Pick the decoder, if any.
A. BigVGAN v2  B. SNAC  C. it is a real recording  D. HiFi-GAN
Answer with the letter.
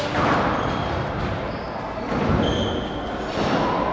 C